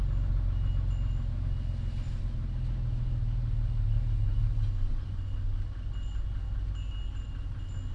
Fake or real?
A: real